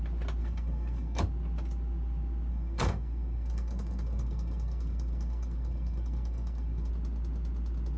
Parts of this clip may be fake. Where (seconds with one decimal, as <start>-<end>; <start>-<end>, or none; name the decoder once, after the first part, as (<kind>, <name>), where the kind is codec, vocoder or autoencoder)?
0.4-1.2 (codec, SNAC); 2.5-6.9